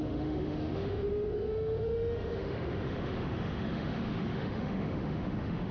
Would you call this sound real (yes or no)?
no